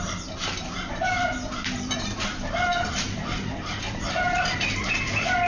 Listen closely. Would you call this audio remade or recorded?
remade